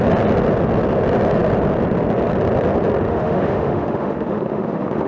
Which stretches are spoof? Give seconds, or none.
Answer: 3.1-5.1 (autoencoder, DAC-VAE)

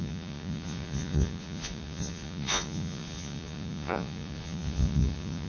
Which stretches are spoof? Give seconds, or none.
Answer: 0.0-5.5 (vocoder, Vocos)

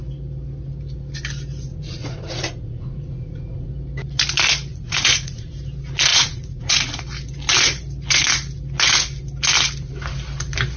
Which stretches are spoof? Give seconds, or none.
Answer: 1.7-3.7 (vocoder, Vocos); 4.7-5.5; 6.1-7.0

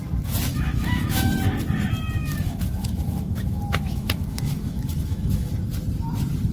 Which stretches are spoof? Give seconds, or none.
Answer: 0.5-1.3 (autoencoder, DAC-VAE); 2.2-5.5

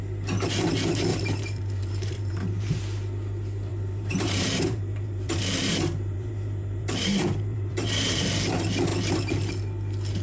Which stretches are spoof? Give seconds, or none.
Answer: 1.1-2.8 (vocoder, BigVGAN v2); 3.7-8.3

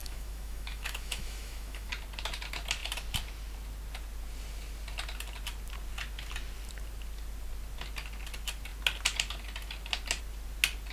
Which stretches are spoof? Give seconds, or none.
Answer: 0.0-1.9 (autoencoder, DAC-VAE)